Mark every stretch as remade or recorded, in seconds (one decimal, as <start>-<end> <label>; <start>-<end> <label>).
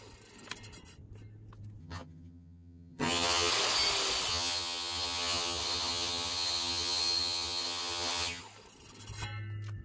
0.0-1.8 recorded; 1.8-3.5 remade; 3.5-4.3 recorded; 4.3-8.4 remade; 8.4-9.8 recorded